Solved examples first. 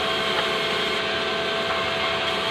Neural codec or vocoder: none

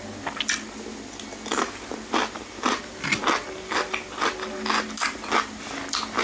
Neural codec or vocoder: none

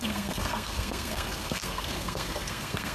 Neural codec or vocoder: codec, SNAC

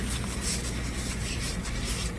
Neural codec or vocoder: none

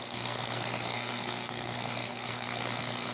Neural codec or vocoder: codec, SNAC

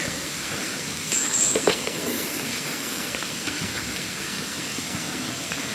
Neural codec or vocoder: codec, SNAC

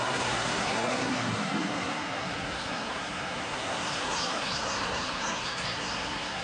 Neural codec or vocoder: codec, SNAC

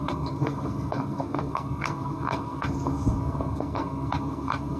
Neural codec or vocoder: codec, SNAC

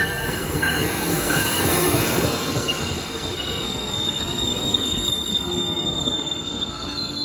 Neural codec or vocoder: codec, SNAC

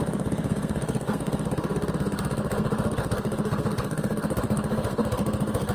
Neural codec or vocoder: codec, SNAC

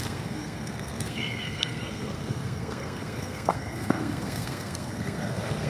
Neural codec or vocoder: codec, SNAC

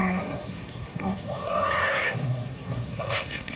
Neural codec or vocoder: codec, SNAC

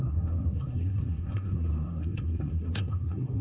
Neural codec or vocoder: codec, SNAC